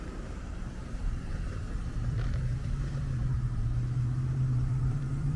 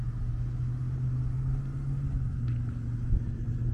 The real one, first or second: second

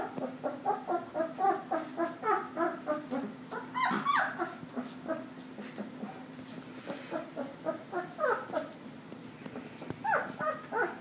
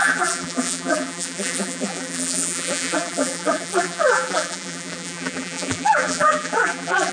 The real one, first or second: first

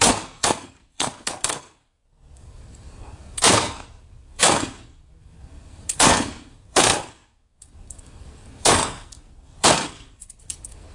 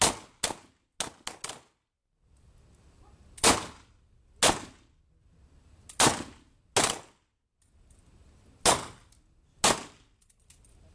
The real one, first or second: second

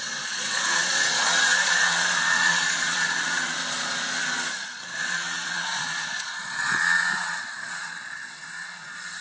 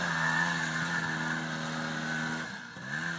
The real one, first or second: second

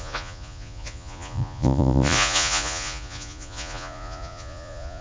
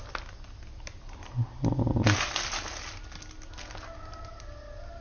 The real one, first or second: second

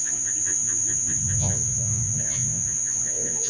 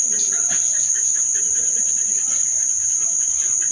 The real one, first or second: second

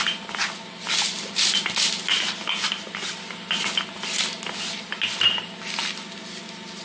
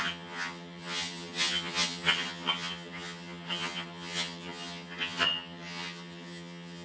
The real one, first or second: first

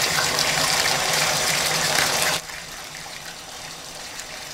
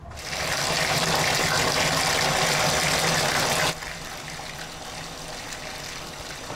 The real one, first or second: second